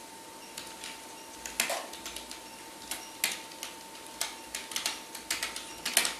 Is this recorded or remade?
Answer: recorded